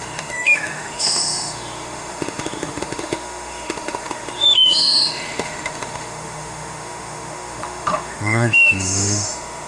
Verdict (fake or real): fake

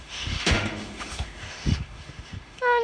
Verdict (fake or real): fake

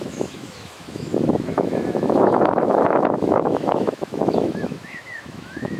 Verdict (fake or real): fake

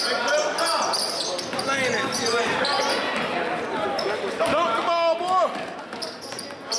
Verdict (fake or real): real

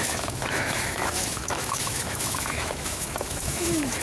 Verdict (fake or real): fake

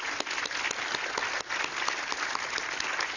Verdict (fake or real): real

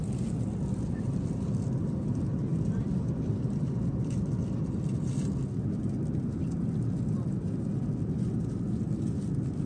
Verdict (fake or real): real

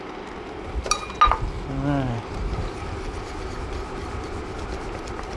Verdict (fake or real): real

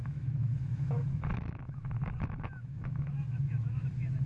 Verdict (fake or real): fake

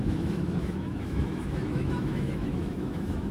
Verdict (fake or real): fake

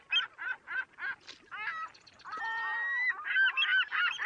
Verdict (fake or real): real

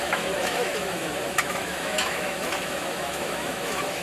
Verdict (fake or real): fake